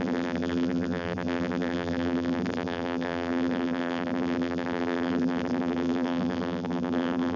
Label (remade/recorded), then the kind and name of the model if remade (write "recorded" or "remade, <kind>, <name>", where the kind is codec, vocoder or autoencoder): remade, vocoder, BigVGAN v2